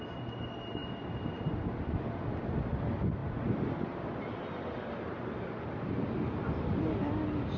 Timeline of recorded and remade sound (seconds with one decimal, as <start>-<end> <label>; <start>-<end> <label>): 0.0-7.6 recorded